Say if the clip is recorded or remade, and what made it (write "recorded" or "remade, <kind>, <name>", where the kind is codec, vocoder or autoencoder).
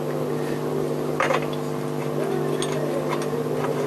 recorded